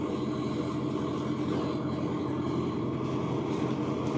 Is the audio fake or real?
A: real